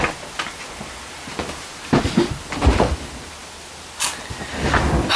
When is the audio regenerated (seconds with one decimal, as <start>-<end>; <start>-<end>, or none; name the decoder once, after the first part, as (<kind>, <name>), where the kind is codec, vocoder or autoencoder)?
none